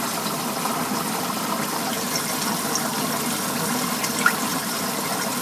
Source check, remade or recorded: recorded